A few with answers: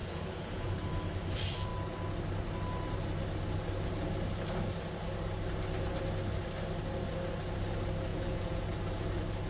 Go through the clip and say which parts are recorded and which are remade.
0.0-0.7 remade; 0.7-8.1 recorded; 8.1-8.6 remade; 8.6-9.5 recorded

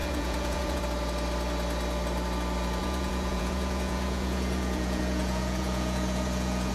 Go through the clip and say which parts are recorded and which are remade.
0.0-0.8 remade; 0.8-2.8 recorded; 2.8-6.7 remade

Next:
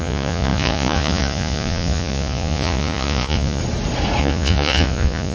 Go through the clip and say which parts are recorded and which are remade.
0.0-3.6 remade; 3.6-4.2 recorded; 4.2-5.3 remade

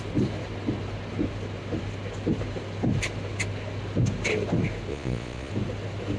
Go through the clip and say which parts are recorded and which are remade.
0.0-4.9 recorded; 4.9-5.5 remade; 5.5-6.2 recorded

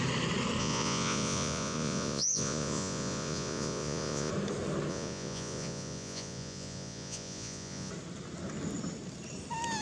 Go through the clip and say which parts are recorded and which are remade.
0.0-0.6 recorded; 0.6-4.3 remade; 4.3-4.9 recorded; 4.9-7.9 remade; 7.9-9.8 recorded